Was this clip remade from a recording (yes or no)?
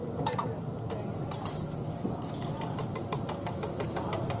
no